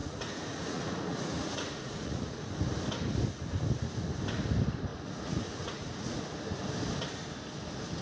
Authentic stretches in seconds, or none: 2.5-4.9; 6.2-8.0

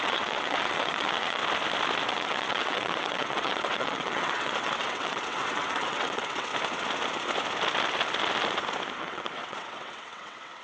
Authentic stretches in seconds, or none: 1.4-2.1; 6.5-9.0